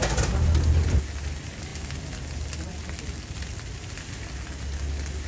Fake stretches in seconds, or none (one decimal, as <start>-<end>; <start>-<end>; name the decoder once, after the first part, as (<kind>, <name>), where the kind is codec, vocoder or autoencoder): none